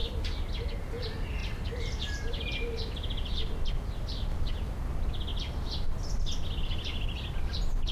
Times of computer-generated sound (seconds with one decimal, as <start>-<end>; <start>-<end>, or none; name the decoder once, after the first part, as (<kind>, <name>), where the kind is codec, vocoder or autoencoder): 0.8-5.3 (vocoder, BigVGAN v2); 6.6-7.9